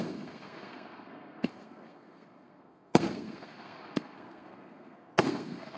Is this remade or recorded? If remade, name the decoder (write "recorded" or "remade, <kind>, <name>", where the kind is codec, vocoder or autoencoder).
remade, codec, SNAC